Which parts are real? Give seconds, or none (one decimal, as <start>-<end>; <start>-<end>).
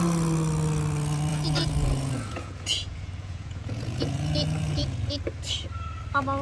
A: 0.0-1.3; 5.1-6.4